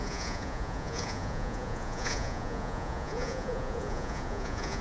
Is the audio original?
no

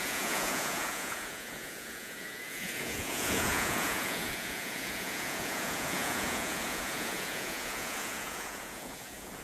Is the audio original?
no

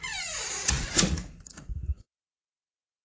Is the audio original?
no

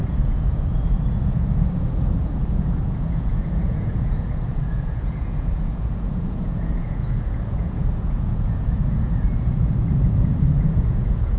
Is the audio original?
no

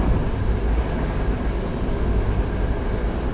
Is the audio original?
yes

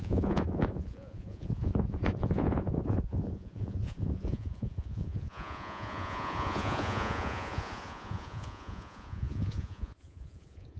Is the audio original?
no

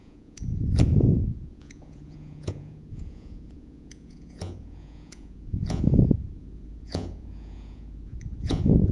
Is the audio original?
no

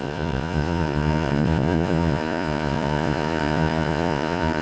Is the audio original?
no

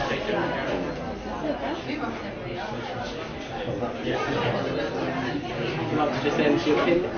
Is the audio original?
yes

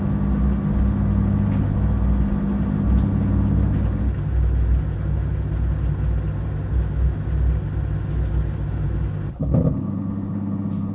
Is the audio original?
yes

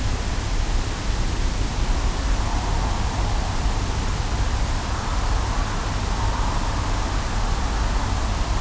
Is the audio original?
yes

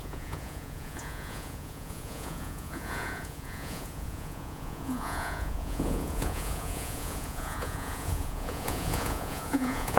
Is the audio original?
no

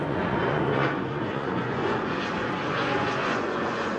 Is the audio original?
no